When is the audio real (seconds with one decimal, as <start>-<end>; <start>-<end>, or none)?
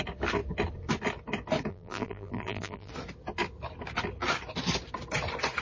0.0-1.7; 2.9-5.6